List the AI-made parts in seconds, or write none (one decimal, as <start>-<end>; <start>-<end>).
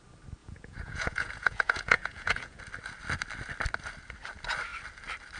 0.4-2.6